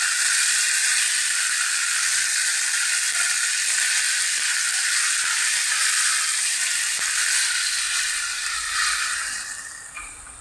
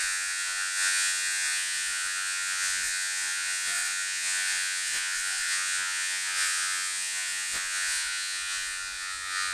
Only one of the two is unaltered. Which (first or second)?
first